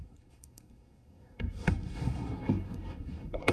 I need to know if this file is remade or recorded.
remade